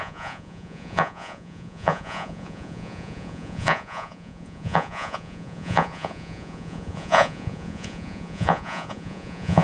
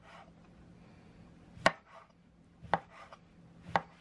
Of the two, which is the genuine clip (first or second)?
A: second